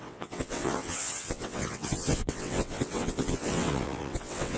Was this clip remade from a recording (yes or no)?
yes